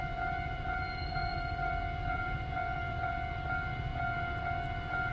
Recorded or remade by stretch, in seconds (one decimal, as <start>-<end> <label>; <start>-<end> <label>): 0.0-3.1 remade; 3.1-5.1 recorded

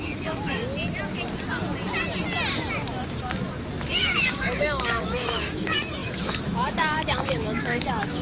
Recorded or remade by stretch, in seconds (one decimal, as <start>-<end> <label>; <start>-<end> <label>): 0.0-0.6 remade; 0.6-3.9 recorded; 3.9-8.2 remade

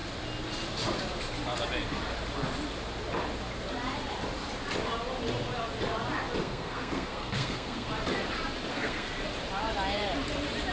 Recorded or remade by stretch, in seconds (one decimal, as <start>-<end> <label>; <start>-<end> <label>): 0.0-6.4 recorded; 6.4-7.9 remade; 7.9-8.7 recorded; 8.7-9.2 remade; 9.2-10.7 recorded

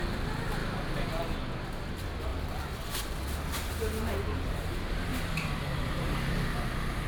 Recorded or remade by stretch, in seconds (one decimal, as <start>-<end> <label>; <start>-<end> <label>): 0.0-0.6 recorded; 0.6-1.2 remade; 1.2-5.1 recorded; 5.1-7.1 remade

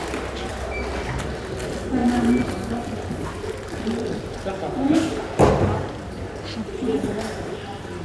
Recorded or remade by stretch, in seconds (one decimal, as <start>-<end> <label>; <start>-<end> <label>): 0.0-0.5 recorded; 0.5-1.3 remade; 1.3-6.9 recorded; 6.9-8.0 remade